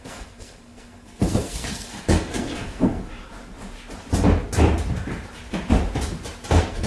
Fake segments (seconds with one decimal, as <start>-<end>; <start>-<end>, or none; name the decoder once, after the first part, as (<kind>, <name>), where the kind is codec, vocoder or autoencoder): 0.0-3.0 (codec, SNAC); 6.5-6.9